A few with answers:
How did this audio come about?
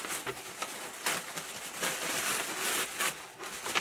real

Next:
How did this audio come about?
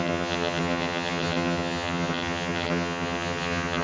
fake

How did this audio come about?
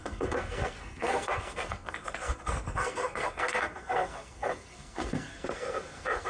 fake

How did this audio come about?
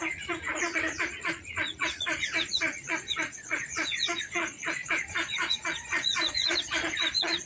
fake